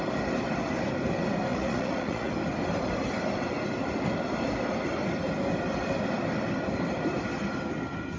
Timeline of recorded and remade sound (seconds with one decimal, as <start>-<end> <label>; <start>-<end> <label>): 0.0-1.5 recorded; 1.5-2.3 remade; 2.3-8.2 recorded